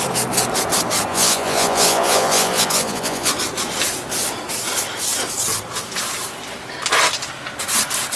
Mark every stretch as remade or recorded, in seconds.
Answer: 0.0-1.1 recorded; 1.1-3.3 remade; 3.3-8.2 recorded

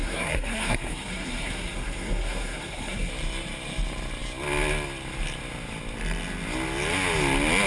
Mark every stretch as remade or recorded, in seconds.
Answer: 0.0-3.1 remade; 3.1-7.7 recorded

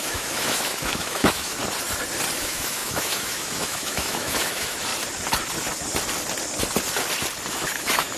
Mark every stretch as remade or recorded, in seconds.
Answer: 0.0-1.6 remade; 1.6-2.4 recorded; 2.4-4.9 remade; 4.9-7.5 recorded; 7.5-8.2 remade

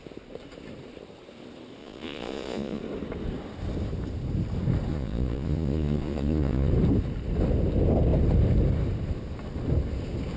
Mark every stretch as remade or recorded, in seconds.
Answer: 0.0-1.8 recorded; 1.8-2.8 remade; 2.8-4.9 recorded; 4.9-6.7 remade; 6.7-10.4 recorded

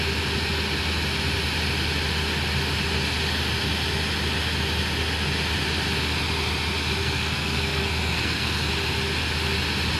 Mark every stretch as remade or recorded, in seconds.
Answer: 0.0-7.0 recorded; 7.0-8.7 remade; 8.7-10.0 recorded

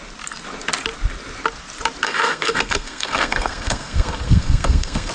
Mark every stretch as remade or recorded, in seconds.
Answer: 0.0-2.0 recorded; 2.0-5.1 remade

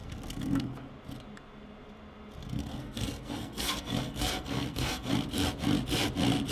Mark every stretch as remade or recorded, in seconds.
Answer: 0.0-0.9 remade; 0.9-2.6 recorded; 2.6-5.1 remade; 5.1-6.5 recorded